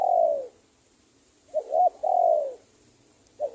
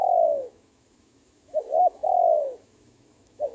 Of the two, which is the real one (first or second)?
first